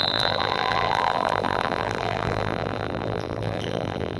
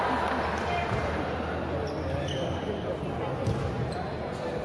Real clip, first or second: second